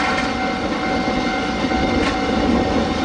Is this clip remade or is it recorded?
recorded